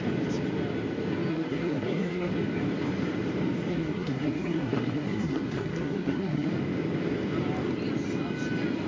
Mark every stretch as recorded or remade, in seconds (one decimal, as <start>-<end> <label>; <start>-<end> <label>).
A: 0.0-1.3 recorded; 1.3-2.3 remade; 2.3-3.7 recorded; 3.7-6.5 remade; 6.5-8.9 recorded